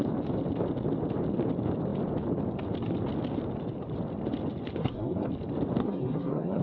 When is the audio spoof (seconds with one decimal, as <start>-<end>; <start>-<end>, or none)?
4.8-5.3; 5.8-6.6